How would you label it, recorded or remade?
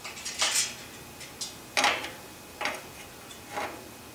recorded